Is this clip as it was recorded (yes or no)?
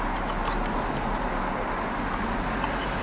yes